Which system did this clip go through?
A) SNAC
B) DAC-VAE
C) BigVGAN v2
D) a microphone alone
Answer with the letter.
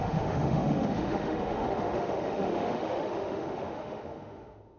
B